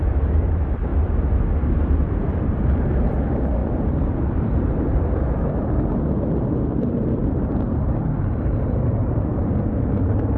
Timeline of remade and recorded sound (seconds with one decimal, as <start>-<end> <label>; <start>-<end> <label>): 0.0-0.9 remade; 0.9-1.6 recorded; 1.6-10.4 remade